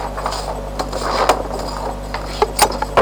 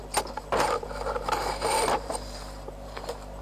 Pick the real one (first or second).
first